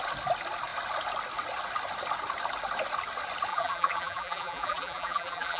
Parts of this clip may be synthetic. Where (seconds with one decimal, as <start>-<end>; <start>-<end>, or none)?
3.5-5.6

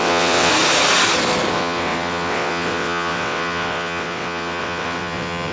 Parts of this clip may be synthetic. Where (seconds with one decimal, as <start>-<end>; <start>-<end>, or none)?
0.0-0.5; 1.5-5.5

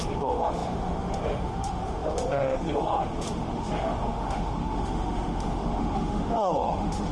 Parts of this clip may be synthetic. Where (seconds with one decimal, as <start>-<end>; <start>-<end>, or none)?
0.0-7.1